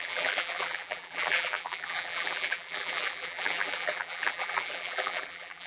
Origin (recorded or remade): remade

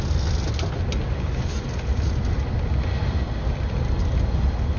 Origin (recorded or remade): recorded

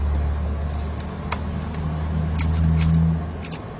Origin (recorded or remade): recorded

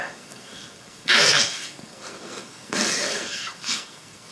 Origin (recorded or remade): remade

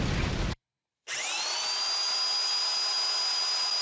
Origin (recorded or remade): recorded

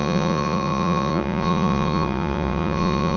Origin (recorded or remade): remade